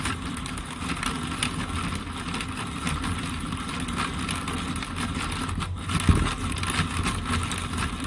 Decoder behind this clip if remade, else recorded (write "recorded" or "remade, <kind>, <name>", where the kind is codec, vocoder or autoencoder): recorded